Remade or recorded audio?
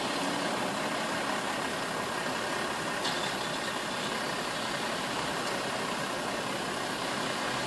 recorded